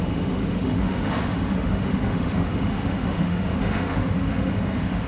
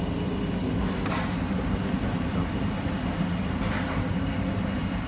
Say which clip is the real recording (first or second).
second